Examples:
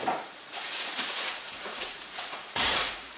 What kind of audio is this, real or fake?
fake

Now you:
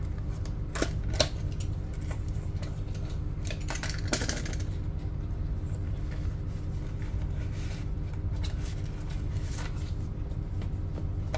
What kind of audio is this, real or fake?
real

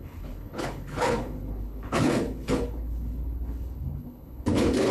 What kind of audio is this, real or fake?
fake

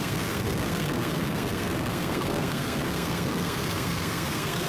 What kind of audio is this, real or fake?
fake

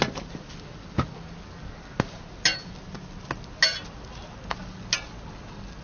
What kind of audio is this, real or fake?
real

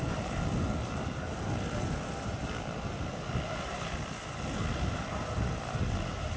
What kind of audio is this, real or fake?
real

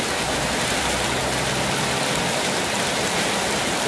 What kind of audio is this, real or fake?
real